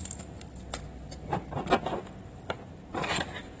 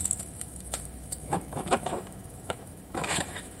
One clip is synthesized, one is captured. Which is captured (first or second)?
first